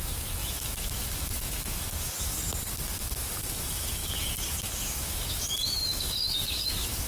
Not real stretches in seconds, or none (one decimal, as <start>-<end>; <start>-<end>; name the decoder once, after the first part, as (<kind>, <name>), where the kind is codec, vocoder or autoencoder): 0.0-2.4 (autoencoder, DAC-VAE); 2.9-7.1